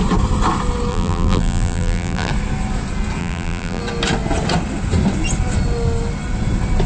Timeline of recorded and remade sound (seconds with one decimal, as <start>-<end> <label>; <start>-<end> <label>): 0.0-0.9 recorded; 0.9-2.3 remade; 2.3-3.2 recorded; 3.2-3.8 remade; 3.8-6.9 recorded